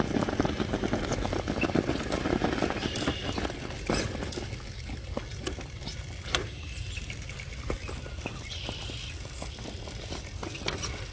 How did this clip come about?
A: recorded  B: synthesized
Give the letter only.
A